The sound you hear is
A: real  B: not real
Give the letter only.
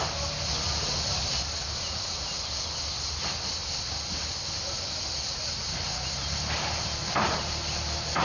A